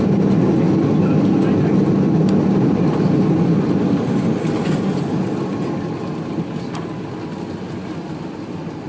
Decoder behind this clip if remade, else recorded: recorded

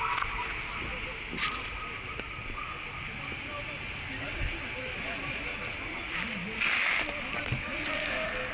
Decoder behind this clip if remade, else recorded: recorded